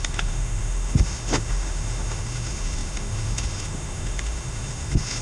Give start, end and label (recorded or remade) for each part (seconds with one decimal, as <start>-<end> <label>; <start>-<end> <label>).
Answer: 0.0-5.2 remade